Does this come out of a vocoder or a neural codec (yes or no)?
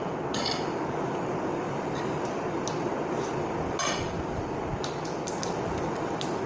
no